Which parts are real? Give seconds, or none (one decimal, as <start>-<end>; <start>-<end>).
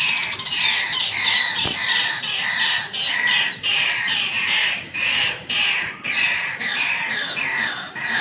0.6-3.2